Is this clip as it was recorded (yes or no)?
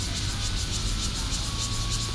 yes